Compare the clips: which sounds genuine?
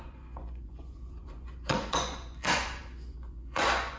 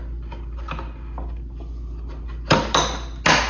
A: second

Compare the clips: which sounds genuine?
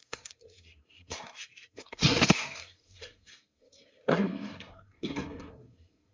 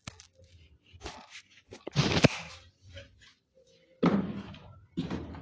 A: second